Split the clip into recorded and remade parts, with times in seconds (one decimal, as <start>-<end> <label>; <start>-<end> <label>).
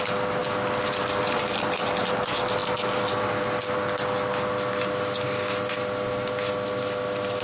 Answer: 0.0-7.4 recorded